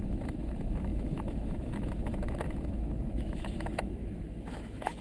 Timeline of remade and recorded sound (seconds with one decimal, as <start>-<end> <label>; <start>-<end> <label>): 0.0-5.0 remade